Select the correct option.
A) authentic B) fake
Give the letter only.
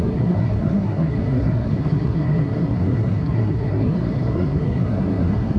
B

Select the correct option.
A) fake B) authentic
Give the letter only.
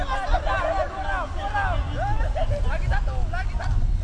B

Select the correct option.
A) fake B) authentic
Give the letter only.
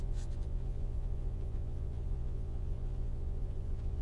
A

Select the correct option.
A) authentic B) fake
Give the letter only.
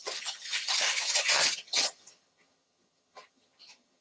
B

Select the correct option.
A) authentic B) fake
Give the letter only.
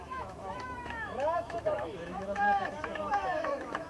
B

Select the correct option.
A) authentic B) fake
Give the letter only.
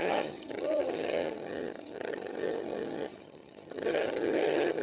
B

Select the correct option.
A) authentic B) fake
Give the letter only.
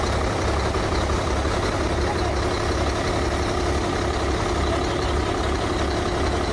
A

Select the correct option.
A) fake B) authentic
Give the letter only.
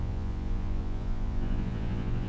A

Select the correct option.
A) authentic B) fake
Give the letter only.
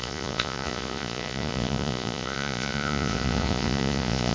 B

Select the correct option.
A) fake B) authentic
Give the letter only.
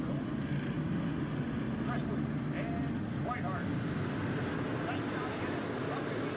B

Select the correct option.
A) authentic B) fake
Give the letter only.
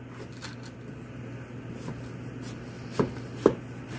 A